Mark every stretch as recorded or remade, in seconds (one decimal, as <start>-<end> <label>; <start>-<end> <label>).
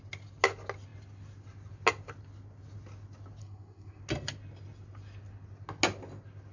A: 0.0-3.4 recorded; 3.4-4.0 remade; 4.0-6.5 recorded